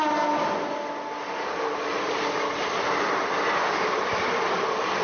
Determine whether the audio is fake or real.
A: real